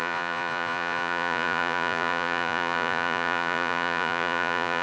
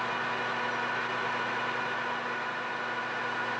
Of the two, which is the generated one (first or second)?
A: first